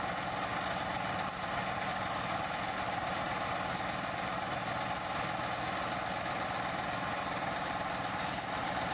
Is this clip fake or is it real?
real